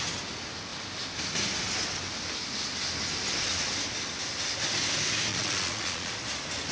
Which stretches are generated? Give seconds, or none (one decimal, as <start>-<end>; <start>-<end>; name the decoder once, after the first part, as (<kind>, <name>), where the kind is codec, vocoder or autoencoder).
5.3-6.1 (vocoder, Vocos)